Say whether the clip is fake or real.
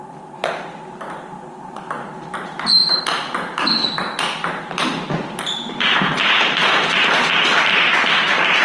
real